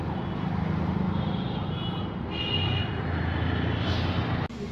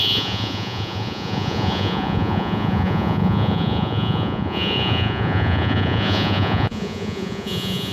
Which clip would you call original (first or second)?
first